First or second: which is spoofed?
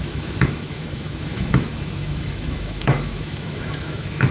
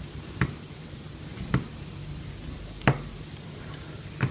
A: first